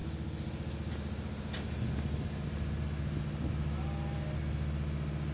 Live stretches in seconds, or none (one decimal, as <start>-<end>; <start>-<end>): 0.0-5.3